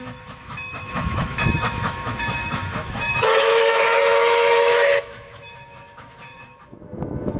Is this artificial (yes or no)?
yes